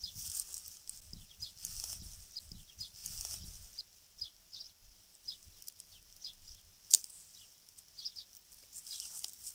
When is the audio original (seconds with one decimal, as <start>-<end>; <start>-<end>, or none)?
0.0-1.5; 2.0-9.5